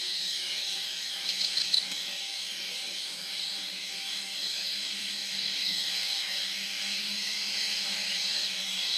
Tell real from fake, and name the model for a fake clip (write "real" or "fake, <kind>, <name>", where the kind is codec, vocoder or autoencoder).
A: fake, codec, DAC